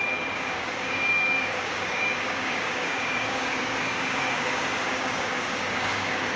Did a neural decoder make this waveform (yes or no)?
yes